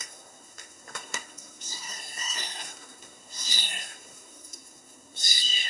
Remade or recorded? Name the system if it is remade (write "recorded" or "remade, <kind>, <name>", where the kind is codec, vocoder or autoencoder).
remade, codec, SNAC